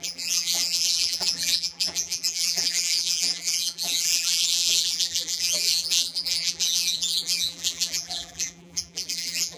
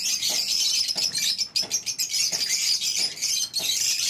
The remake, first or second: first